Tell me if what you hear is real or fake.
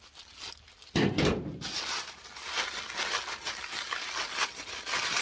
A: real